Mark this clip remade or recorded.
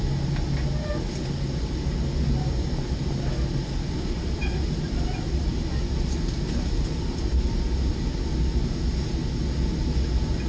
recorded